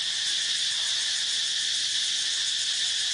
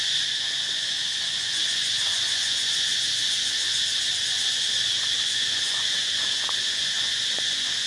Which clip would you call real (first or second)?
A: first